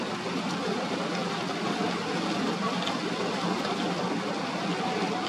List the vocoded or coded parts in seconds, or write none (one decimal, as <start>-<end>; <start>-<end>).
none